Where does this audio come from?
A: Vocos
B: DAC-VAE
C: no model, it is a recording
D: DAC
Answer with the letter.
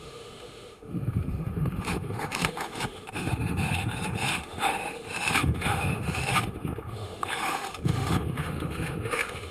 B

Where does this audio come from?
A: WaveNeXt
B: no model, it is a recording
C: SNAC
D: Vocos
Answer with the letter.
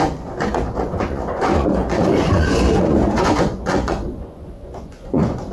D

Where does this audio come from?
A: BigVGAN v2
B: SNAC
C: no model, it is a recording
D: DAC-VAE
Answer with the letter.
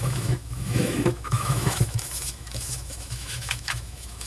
D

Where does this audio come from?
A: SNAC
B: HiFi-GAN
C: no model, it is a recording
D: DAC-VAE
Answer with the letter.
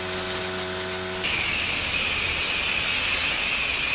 C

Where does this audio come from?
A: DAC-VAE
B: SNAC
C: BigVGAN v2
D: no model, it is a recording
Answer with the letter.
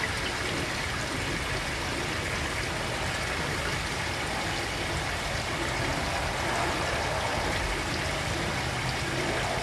D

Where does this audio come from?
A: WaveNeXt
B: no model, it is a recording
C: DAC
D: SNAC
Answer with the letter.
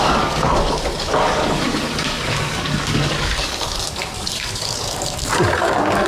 C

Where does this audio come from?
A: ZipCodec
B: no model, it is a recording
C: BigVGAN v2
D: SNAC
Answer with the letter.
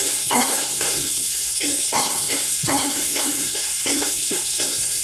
D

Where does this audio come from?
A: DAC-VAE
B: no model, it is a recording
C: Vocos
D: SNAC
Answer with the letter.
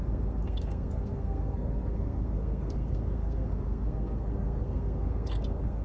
D